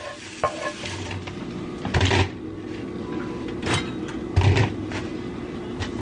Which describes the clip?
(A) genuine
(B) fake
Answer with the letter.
A